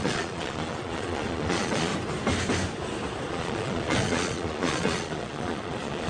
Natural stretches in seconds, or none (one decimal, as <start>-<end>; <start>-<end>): 1.9-3.3